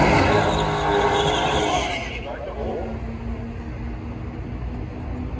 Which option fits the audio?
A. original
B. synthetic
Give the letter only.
A